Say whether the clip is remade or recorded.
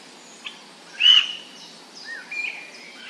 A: recorded